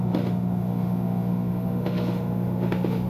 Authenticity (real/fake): fake